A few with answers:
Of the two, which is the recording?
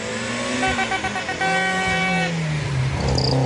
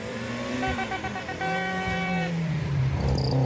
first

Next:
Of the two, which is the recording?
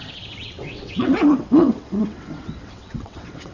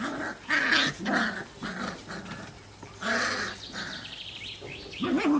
second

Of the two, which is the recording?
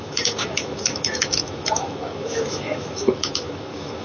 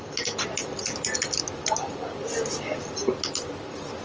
second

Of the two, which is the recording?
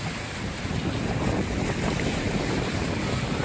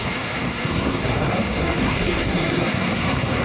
first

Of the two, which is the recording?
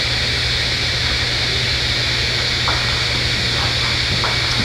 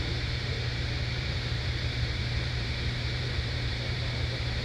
first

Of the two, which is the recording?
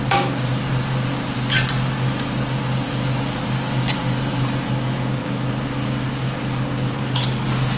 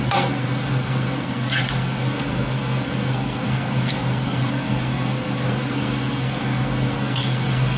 first